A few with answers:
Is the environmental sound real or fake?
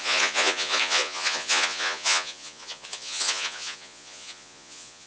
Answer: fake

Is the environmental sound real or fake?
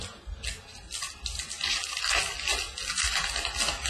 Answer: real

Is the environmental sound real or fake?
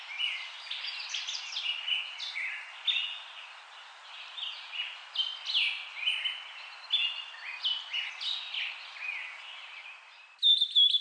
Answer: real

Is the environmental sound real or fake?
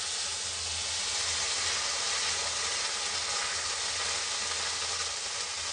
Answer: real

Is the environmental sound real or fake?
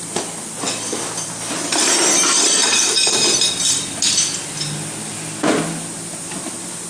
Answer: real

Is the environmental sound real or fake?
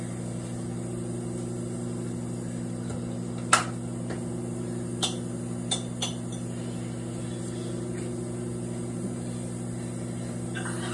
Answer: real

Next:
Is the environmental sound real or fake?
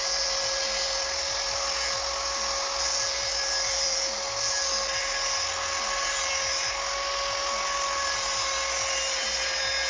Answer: real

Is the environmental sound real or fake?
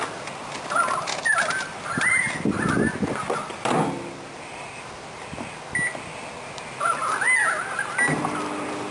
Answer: real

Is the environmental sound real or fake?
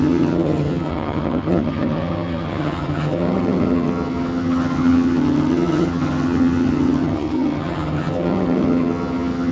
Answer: fake